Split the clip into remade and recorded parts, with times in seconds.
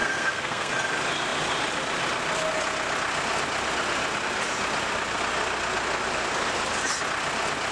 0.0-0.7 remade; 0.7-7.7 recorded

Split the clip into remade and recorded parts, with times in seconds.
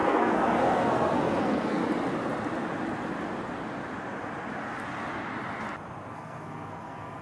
0.0-1.8 remade; 1.8-6.1 recorded; 6.1-7.2 remade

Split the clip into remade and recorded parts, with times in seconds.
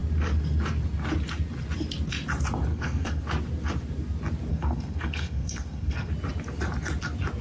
0.0-2.7 recorded; 2.7-3.2 remade; 3.2-4.5 recorded; 4.5-6.1 remade; 6.1-7.4 recorded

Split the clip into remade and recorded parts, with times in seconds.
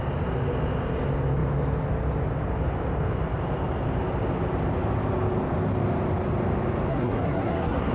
0.0-6.9 recorded; 6.9-7.9 remade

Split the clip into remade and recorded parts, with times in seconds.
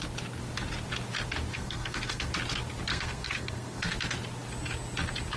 0.0-1.5 recorded; 1.5-2.3 remade; 2.3-2.9 recorded; 2.9-3.9 remade; 3.9-5.4 recorded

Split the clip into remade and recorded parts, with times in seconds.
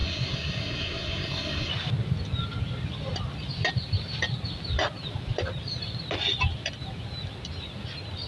0.0-1.7 remade; 1.7-8.3 recorded